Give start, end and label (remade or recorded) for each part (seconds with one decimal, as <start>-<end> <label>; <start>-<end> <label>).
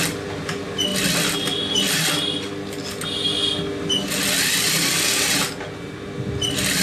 0.0-6.8 recorded